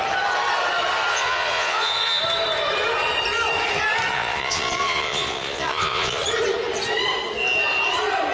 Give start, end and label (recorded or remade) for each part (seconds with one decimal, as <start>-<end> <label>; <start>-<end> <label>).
0.0-1.1 recorded; 1.1-2.2 remade; 2.2-4.1 recorded; 4.1-6.2 remade; 6.2-8.3 recorded